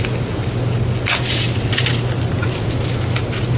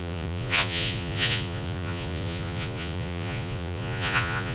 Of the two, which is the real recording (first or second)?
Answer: first